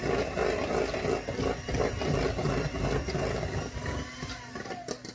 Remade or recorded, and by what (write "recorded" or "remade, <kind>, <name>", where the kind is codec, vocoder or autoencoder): recorded